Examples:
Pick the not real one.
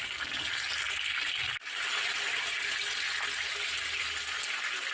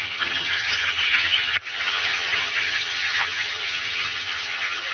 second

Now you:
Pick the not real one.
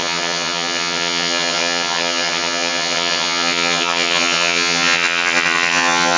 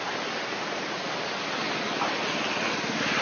first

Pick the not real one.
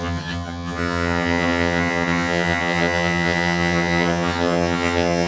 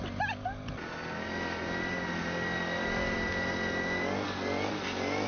first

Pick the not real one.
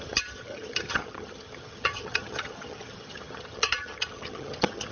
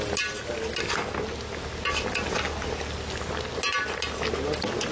first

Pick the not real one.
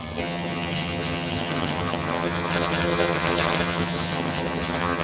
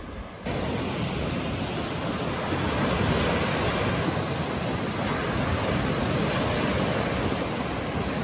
first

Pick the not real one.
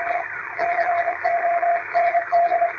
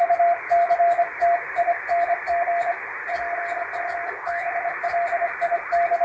first